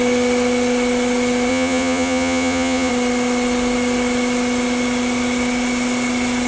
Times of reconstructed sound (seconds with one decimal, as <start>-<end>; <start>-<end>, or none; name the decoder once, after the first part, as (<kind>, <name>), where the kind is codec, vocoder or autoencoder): 1.5-2.9 (vocoder, Vocos)